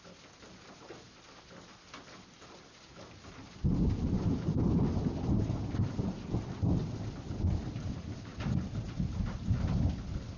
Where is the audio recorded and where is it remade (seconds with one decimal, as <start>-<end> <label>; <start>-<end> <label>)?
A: 0.0-10.4 recorded